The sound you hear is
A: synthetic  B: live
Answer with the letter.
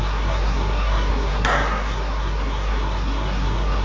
A